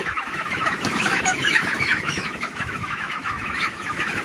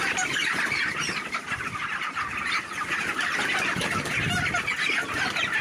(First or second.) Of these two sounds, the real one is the second